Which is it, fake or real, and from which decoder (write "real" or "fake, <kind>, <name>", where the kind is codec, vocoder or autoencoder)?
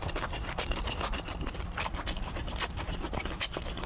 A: real